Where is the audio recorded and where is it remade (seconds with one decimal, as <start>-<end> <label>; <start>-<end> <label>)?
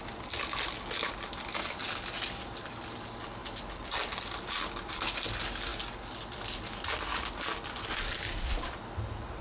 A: 0.0-9.4 recorded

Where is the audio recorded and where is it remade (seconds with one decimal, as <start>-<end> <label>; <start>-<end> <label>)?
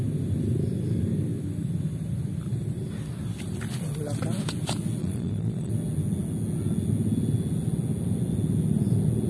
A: 0.0-5.0 recorded; 5.0-5.7 remade; 5.7-9.3 recorded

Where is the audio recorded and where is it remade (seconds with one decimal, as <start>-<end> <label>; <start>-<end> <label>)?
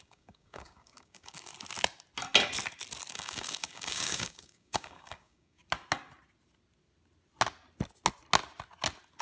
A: 0.0-1.5 remade; 1.5-3.1 recorded; 3.1-5.6 remade; 5.6-9.2 recorded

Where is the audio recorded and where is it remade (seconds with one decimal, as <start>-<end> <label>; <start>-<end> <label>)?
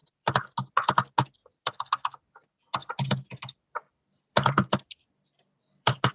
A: 0.0-0.7 remade; 0.7-2.8 recorded; 2.8-6.1 remade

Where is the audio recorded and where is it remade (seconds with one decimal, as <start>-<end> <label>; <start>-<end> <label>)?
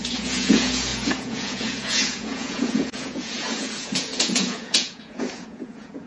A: 0.0-6.1 remade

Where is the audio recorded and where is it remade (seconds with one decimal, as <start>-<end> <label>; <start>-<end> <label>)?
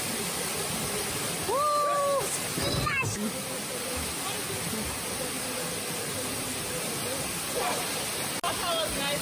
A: 0.0-9.2 recorded